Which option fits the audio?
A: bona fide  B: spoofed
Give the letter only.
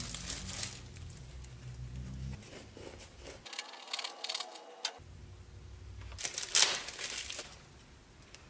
A